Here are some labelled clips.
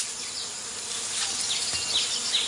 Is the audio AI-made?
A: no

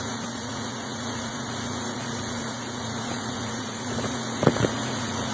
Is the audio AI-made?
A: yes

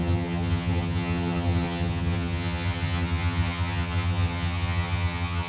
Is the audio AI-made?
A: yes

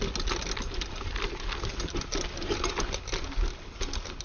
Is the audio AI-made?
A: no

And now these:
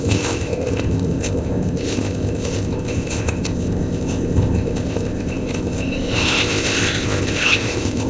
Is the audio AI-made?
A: yes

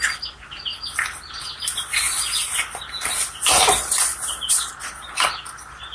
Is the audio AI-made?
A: no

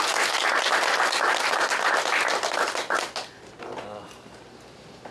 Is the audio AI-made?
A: no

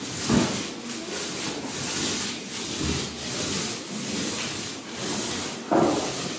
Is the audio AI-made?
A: no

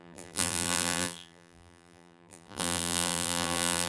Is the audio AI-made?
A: yes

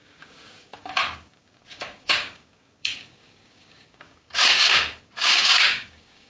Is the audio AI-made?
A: yes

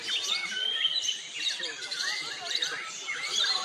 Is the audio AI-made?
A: yes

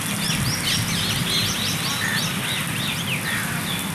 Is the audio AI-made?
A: no